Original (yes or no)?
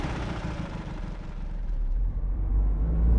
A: no